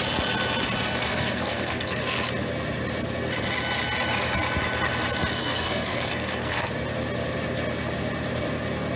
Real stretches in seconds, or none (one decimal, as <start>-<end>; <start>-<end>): 0.0-1.0; 2.0-5.4; 6.7-9.0

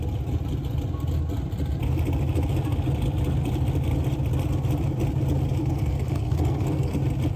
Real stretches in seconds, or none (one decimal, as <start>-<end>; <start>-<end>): 0.0-5.6; 6.9-7.4

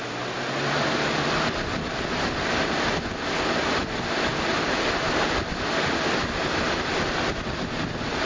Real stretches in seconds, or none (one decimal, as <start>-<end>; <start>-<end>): 0.0-8.3

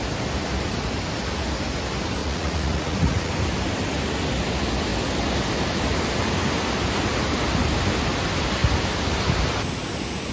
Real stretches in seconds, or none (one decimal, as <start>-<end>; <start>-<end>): 0.0-2.2; 3.3-10.3

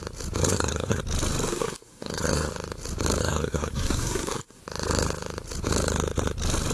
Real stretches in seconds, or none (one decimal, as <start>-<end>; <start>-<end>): 0.0-0.4; 1.0-1.5; 2.5-3.2; 4.6-6.7

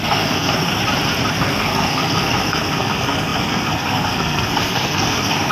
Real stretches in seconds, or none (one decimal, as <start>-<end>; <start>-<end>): 0.8-1.3

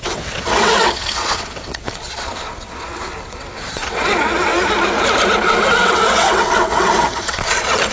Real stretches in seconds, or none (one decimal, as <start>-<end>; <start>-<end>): 4.5-5.4